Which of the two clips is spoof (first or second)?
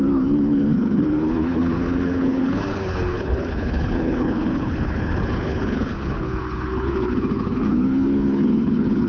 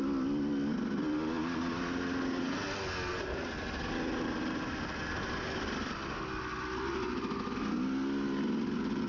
first